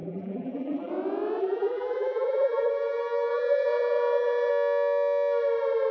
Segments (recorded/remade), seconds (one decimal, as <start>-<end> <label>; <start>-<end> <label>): 0.0-0.9 remade; 0.9-1.4 recorded; 1.4-2.7 remade; 2.7-3.3 recorded; 3.3-4.5 remade; 4.5-5.9 recorded